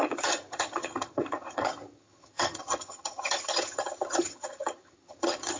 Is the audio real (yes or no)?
no